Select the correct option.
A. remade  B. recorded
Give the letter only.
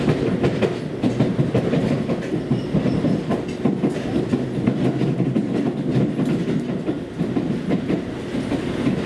B